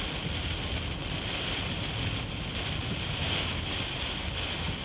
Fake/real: real